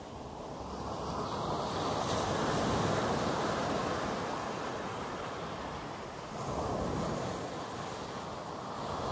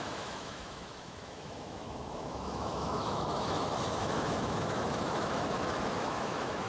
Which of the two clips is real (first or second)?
first